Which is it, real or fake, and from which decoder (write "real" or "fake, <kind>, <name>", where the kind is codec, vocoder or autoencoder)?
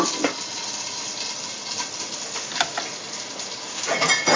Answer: real